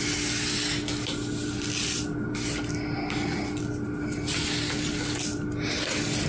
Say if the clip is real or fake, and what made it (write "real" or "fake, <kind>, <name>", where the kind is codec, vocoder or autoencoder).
real